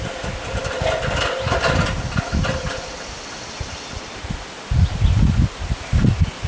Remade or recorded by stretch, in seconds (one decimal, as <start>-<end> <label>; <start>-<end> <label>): 0.0-6.5 recorded

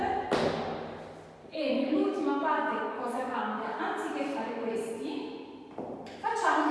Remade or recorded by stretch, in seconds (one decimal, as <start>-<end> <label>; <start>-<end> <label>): 0.0-1.4 recorded; 1.4-3.8 remade; 3.8-6.7 recorded

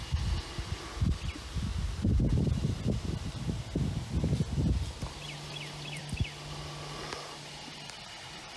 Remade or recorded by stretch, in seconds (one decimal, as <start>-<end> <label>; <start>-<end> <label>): 0.0-8.6 recorded

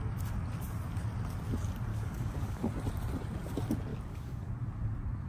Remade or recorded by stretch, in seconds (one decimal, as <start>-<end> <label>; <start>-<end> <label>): 0.0-1.9 recorded; 1.9-2.7 remade; 2.7-3.9 recorded; 3.9-4.5 remade; 4.5-5.3 recorded